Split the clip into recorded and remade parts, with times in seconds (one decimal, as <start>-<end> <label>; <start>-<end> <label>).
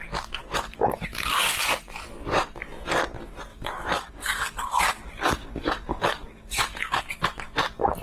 0.0-0.4 recorded; 0.4-1.6 remade; 1.6-3.5 recorded; 3.5-7.0 remade; 7.0-8.0 recorded